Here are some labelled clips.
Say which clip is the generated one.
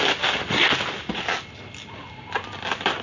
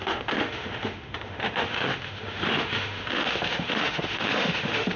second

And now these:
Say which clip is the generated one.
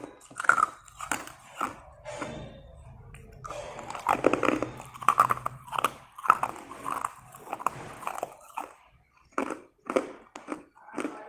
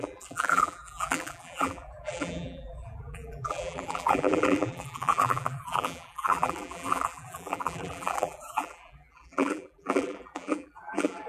second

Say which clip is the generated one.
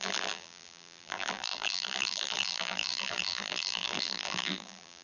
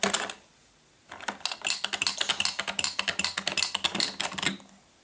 first